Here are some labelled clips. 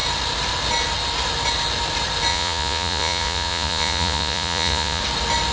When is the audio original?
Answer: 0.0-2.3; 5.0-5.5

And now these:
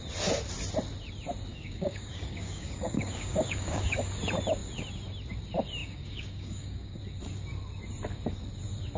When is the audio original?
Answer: 0.0-1.5; 4.1-5.8; 7.0-9.0

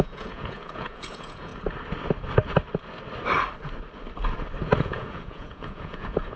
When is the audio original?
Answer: 1.5-4.8

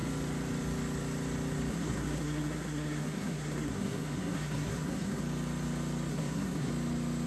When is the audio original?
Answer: 0.0-1.7; 5.2-6.1; 6.7-7.3